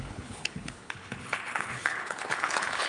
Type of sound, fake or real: fake